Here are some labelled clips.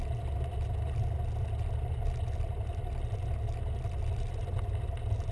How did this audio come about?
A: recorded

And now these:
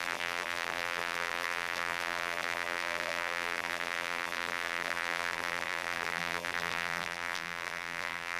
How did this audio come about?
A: remade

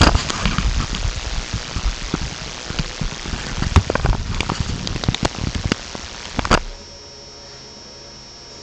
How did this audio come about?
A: recorded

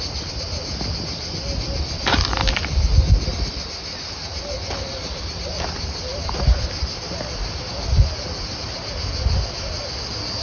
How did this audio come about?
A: recorded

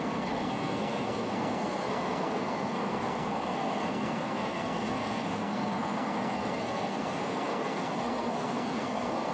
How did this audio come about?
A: remade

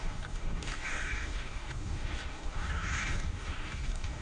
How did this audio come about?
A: remade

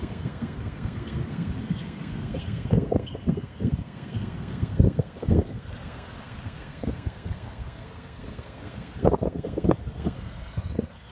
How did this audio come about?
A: remade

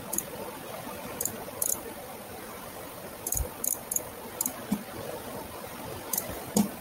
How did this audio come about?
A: recorded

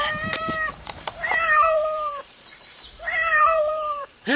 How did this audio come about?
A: remade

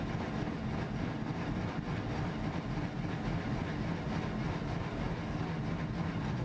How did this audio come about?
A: recorded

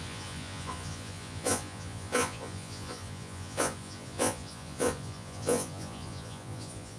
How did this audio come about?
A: remade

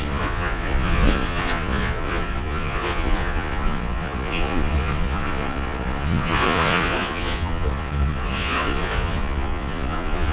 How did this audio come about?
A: remade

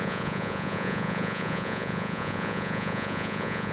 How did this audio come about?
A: remade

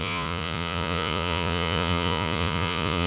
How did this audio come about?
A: remade